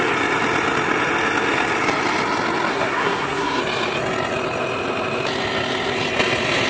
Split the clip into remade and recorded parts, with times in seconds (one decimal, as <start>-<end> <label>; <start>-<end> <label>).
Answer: 0.0-2.7 recorded; 2.7-3.6 remade; 3.6-6.7 recorded